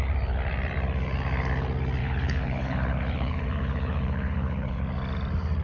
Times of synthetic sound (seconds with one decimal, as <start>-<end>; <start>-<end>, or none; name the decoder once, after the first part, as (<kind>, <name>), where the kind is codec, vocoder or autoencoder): 2.0-4.8 (codec, HILCodec)